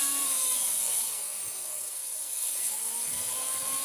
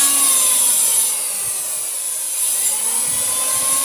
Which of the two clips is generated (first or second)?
first